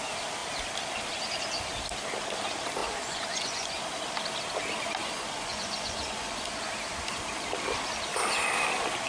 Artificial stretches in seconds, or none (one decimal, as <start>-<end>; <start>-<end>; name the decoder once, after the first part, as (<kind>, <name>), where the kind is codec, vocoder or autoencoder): 2.8-3.8 (vocoder, Vocos); 5.0-6.7